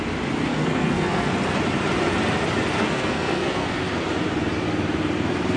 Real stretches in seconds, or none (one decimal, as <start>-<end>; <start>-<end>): 0.0-0.5; 1.3-2.8; 3.8-5.6